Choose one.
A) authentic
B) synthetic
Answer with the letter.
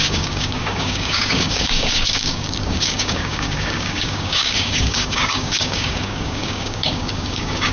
B